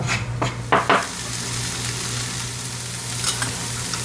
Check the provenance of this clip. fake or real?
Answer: real